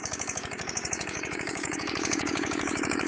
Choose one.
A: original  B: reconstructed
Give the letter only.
B